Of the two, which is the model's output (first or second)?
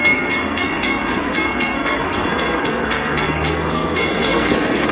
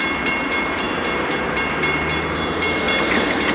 first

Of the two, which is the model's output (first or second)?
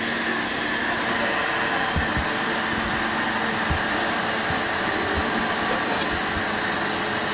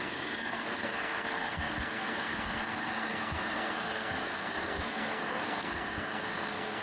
second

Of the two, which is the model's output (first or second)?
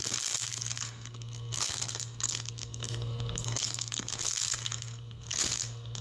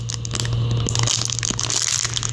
first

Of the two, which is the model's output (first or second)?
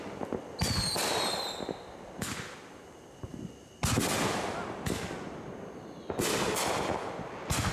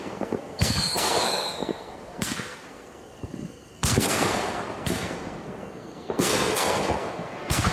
second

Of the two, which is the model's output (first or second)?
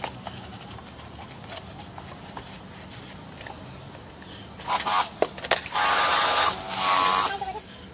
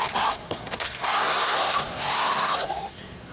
second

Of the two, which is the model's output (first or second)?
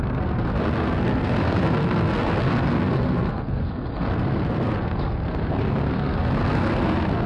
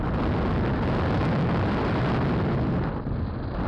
first